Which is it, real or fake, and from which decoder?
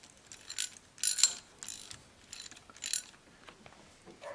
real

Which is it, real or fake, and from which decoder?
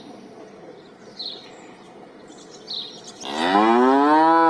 real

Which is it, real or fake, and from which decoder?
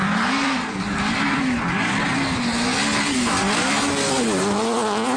real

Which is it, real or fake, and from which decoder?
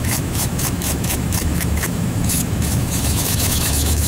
fake, autoencoder, DAC-VAE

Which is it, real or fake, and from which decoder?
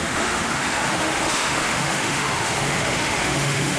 fake, autoencoder, DAC-VAE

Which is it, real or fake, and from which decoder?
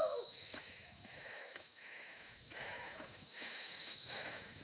fake, autoencoder, DAC-VAE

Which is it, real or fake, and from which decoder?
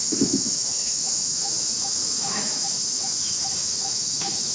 fake, autoencoder, DAC-VAE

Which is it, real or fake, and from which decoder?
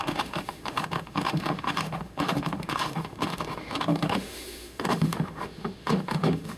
fake, autoencoder, DAC-VAE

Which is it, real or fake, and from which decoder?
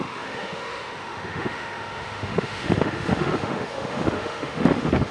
fake, autoencoder, DAC-VAE